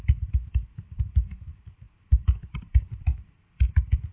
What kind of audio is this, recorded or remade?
recorded